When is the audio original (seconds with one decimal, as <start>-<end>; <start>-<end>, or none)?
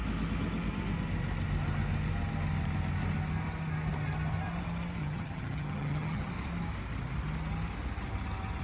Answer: 0.0-5.0; 6.3-8.6